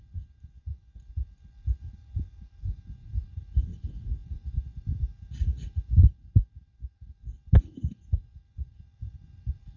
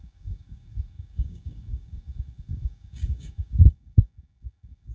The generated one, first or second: second